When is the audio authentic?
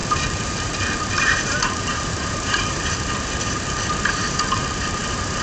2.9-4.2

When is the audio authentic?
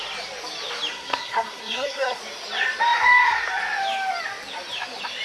0.0-0.9; 2.2-5.2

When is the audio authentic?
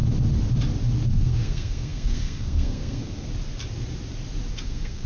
0.0-1.1; 3.3-4.5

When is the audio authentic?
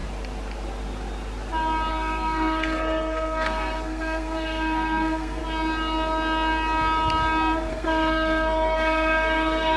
0.0-1.9; 5.4-7.7